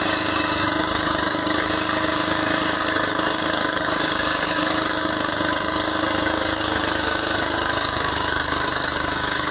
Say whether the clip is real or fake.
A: fake